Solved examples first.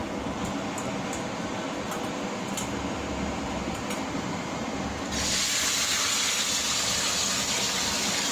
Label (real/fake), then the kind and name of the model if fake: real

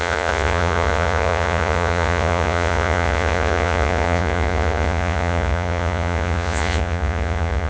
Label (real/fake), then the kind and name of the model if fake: fake, vocoder, Vocos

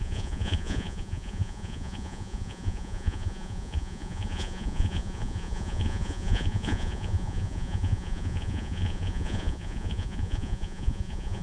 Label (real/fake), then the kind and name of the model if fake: fake, vocoder, Vocos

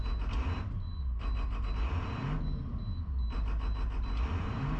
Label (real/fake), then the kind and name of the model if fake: real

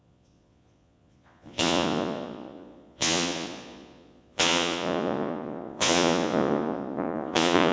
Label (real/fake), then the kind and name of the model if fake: fake, vocoder, Vocos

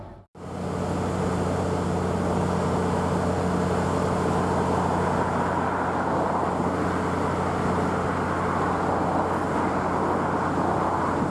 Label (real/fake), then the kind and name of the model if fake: real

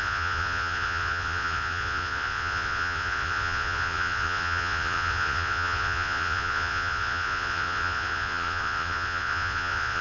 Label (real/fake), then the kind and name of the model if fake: fake, vocoder, Vocos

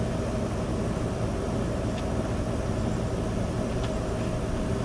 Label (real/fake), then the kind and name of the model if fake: real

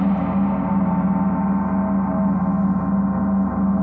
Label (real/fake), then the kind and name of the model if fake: real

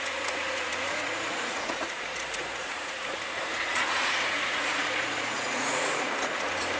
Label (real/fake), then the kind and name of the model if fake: fake, vocoder, Vocos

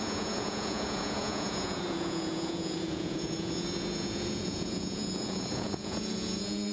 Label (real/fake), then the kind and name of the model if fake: fake, vocoder, Vocos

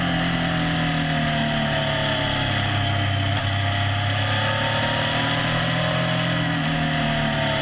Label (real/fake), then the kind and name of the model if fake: real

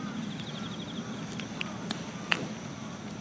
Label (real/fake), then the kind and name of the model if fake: real